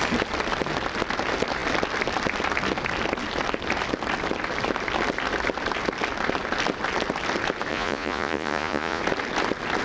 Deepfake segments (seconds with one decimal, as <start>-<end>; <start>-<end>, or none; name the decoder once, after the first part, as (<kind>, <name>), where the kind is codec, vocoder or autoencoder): 7.7-9.0 (vocoder, Vocos)